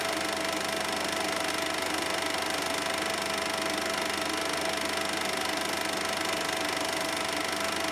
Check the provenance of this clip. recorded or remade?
recorded